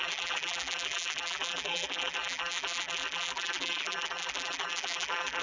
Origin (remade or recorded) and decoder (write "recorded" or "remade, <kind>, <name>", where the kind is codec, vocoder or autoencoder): remade, vocoder, BigVGAN v2